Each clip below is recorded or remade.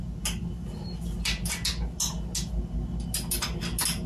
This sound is recorded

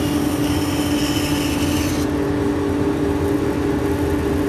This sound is recorded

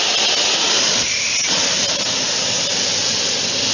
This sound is recorded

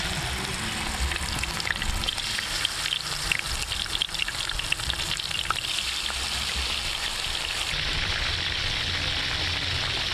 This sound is recorded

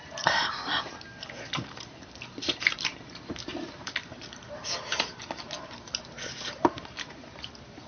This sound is remade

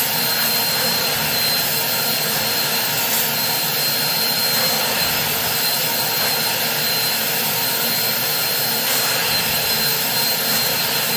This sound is remade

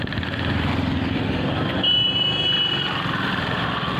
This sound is recorded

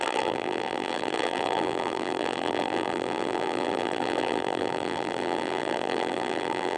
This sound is remade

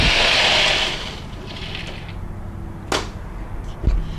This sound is recorded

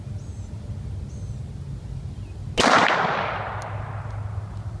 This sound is recorded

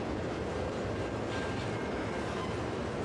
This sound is recorded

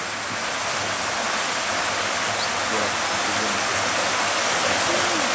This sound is recorded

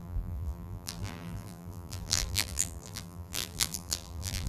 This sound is remade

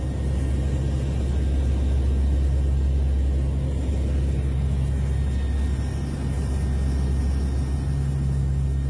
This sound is recorded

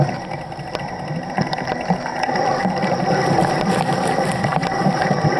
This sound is remade